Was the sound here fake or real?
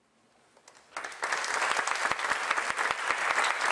real